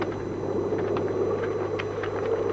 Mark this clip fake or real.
fake